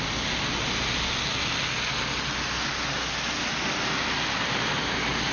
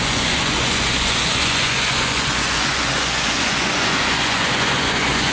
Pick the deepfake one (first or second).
second